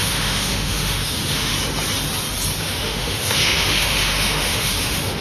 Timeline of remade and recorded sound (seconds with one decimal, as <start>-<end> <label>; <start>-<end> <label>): 0.0-1.5 remade; 1.5-2.6 recorded; 2.6-5.2 remade